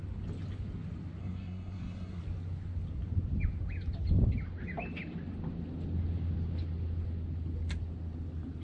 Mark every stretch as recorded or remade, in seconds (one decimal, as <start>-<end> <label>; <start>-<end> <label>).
0.0-1.2 recorded; 1.2-2.2 remade; 2.2-8.6 recorded